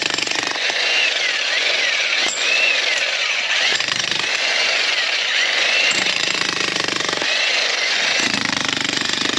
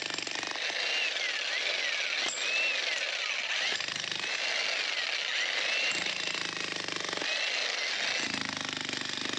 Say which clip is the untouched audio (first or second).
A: second